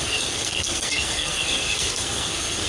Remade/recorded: remade